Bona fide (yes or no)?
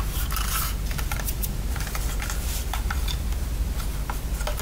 yes